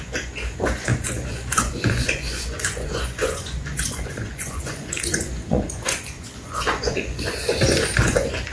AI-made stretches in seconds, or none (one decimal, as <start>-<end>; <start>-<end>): 0.0-8.5